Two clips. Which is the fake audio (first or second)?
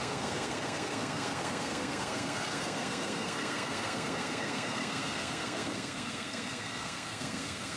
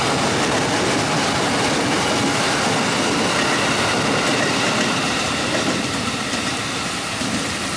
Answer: first